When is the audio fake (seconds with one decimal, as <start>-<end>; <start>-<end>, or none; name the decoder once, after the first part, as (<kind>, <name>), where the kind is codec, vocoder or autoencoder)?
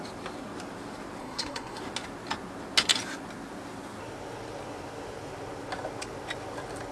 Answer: 1.2-1.8 (codec, SNAC)